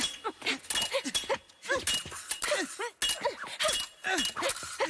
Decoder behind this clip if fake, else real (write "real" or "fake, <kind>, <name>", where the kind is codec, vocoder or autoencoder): real